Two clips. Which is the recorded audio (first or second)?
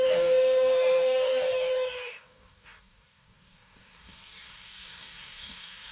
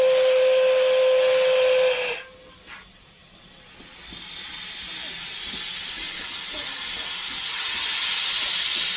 second